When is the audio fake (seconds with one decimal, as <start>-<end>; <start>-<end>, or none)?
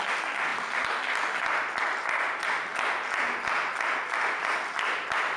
none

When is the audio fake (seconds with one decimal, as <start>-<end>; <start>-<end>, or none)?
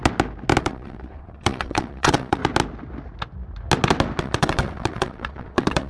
0.6-2.4; 4.2-5.9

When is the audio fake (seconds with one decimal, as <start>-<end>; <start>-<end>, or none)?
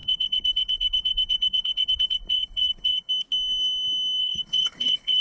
0.0-3.1; 4.2-5.2